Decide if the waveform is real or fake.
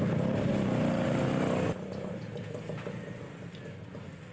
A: real